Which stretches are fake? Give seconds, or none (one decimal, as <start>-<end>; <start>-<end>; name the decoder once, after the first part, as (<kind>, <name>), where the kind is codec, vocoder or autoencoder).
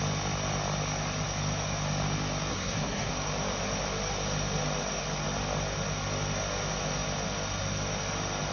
2.5-3.1 (codec, SNAC)